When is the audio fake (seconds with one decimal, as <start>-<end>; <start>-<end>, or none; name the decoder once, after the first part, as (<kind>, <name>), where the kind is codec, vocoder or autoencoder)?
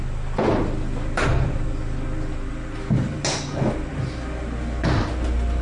none